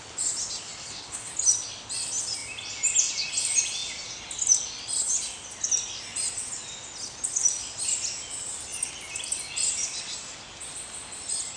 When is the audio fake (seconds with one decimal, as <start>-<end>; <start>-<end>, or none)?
0.8-1.3